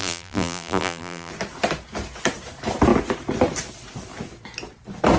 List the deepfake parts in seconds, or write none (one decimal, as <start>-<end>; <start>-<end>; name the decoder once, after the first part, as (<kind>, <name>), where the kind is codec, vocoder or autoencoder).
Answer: 0.0-1.3 (vocoder, BigVGAN v2)